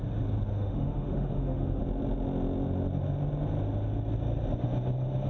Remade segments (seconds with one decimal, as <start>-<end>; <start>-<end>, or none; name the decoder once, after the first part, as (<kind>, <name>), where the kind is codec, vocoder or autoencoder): 0.5-1.8 (autoencoder, DAC-VAE)